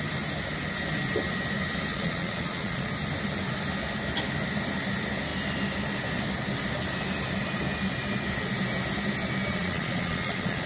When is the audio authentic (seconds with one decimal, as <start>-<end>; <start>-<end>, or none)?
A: 0.0-1.9; 2.9-9.5